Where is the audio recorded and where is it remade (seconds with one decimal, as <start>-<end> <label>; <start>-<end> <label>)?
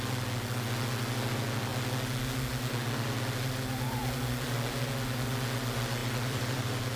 0.0-6.0 recorded; 6.0-7.0 remade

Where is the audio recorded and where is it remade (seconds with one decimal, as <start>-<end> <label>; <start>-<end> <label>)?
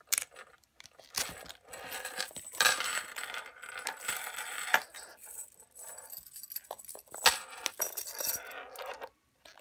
0.0-9.6 recorded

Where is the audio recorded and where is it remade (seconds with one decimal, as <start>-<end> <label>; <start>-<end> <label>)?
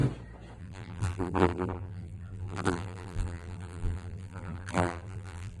0.0-0.6 recorded; 0.6-5.6 remade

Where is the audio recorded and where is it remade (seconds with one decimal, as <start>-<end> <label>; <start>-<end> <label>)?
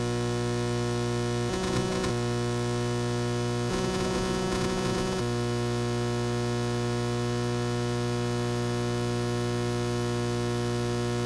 0.0-1.5 recorded; 1.5-2.1 remade; 2.1-3.7 recorded; 3.7-5.2 remade; 5.2-11.3 recorded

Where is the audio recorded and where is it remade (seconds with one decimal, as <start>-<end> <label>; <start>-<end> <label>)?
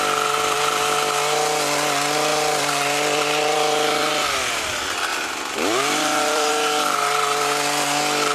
0.0-2.3 recorded; 2.3-4.1 remade; 4.1-5.1 recorded; 5.1-6.5 remade; 6.5-8.3 recorded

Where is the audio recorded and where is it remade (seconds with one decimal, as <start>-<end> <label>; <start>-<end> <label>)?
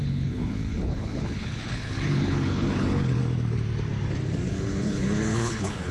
0.0-3.2 remade; 3.2-4.5 recorded; 4.5-5.9 remade